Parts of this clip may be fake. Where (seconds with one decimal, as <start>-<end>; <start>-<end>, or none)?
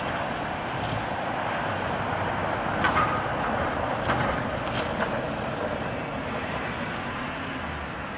none